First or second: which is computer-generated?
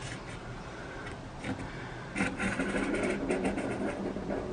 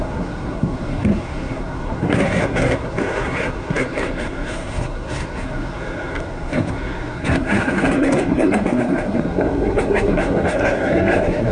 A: second